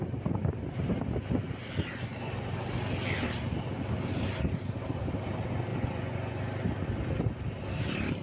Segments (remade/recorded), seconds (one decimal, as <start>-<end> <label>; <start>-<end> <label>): 0.0-5.7 recorded; 5.7-6.4 remade; 6.4-8.2 recorded